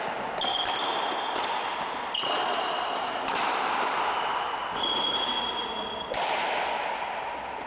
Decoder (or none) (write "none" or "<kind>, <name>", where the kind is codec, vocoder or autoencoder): none